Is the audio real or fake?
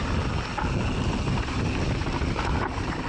real